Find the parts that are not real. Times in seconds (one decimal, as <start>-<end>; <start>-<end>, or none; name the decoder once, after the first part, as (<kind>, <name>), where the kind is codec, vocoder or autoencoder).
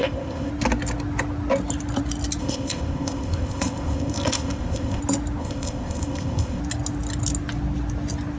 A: 0.0-0.5 (codec, ZipCodec); 2.4-5.0; 5.4-6.6